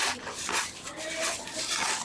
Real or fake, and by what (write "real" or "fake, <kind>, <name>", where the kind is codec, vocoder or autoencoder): real